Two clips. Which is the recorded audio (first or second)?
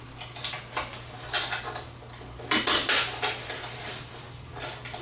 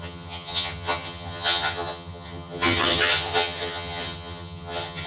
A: first